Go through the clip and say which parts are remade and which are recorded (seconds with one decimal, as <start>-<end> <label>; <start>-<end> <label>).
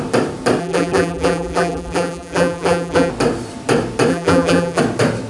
0.0-0.6 recorded; 0.6-3.1 remade; 3.1-4.1 recorded; 4.1-4.8 remade; 4.8-5.3 recorded